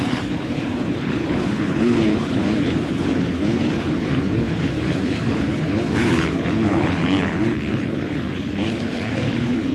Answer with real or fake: fake